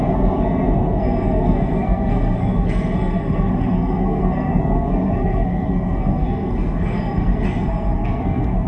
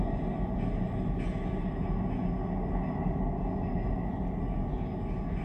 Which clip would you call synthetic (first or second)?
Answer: first